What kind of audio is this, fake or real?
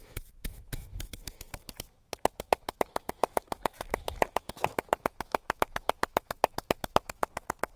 fake